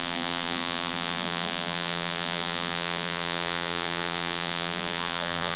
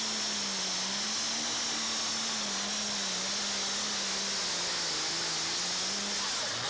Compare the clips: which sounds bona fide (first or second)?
second